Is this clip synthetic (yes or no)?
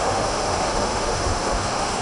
yes